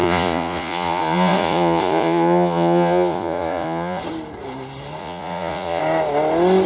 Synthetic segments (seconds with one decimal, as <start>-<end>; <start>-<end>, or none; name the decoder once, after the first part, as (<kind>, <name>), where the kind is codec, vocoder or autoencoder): 0.0-4.0 (vocoder, Vocos); 5.0-5.8